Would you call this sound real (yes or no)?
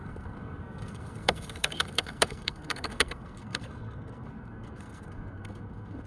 no